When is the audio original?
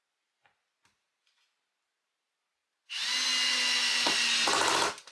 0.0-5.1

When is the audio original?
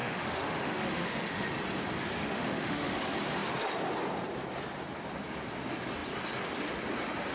1.5-2.2; 3.0-7.3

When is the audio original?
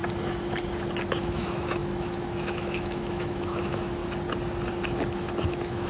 0.0-1.2; 4.0-5.5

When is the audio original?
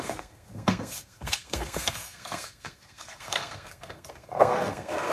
none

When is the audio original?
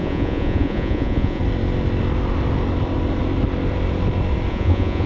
1.4-4.5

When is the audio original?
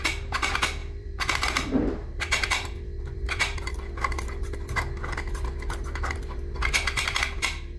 0.0-0.8; 3.7-7.8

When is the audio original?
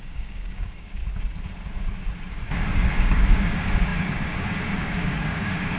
1.0-2.3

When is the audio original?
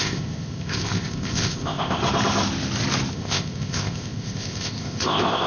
2.0-3.1